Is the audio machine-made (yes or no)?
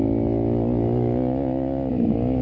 no